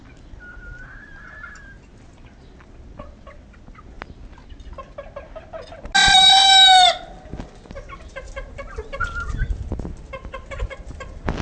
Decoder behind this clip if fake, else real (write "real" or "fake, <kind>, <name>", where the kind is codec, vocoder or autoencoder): real